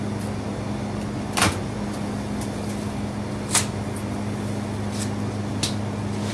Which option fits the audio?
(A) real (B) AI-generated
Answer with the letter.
A